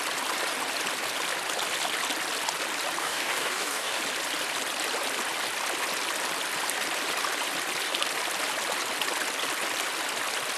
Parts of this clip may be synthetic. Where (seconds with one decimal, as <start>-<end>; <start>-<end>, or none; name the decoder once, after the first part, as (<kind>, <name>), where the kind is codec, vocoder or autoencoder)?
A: 3.0-4.0 (codec, DAC)